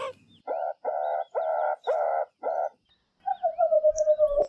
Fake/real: real